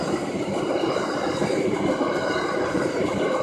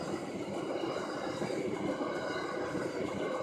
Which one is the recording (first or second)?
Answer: second